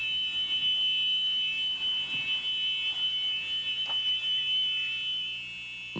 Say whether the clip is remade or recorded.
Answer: recorded